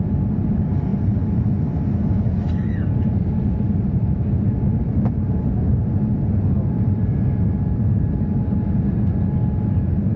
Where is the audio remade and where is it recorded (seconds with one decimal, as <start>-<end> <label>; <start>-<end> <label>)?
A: 0.0-10.2 recorded